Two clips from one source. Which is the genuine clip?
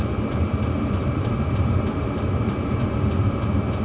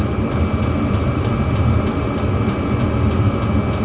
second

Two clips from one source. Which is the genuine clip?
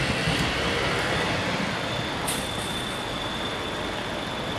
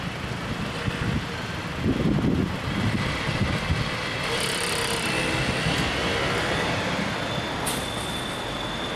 second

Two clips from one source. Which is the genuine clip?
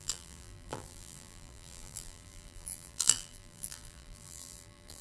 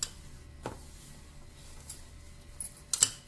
second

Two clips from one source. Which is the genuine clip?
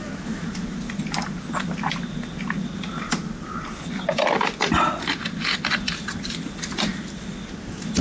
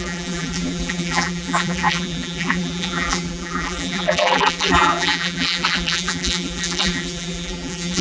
first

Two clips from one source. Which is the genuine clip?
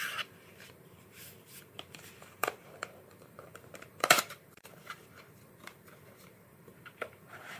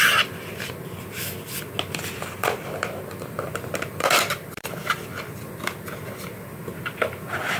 second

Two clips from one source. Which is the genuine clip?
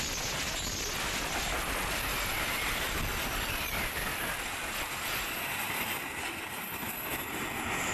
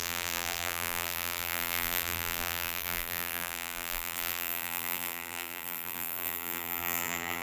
first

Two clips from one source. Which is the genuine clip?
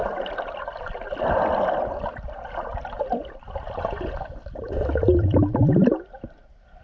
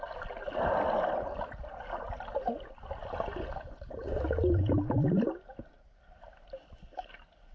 second